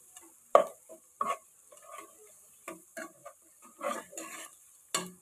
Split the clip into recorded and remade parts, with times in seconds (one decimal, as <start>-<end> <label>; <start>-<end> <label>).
0.0-5.2 recorded

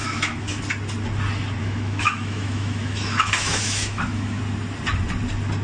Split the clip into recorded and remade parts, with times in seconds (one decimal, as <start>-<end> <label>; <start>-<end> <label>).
0.0-0.6 remade; 0.6-1.6 recorded; 1.6-4.4 remade; 4.4-5.6 recorded

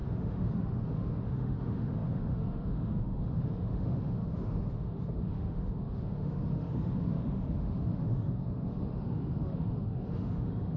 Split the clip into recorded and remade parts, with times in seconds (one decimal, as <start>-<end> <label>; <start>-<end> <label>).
0.0-10.8 remade

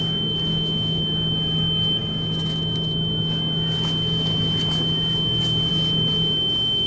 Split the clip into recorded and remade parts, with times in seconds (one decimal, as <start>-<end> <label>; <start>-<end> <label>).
0.0-0.5 recorded; 0.5-1.0 remade; 1.0-6.9 recorded

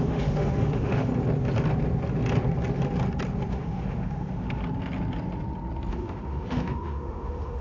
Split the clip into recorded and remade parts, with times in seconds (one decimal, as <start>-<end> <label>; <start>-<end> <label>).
0.0-1.1 remade; 1.1-3.5 recorded; 3.5-4.6 remade; 4.6-5.9 recorded; 5.9-7.6 remade